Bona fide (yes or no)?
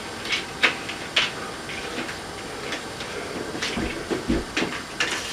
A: yes